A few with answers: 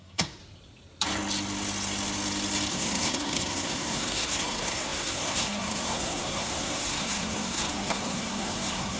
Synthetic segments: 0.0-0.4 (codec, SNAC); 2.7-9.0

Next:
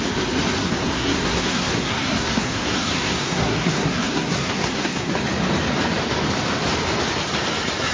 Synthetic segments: 0.6-5.1 (codec, SNAC)

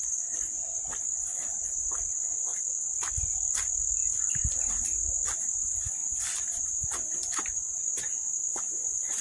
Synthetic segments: none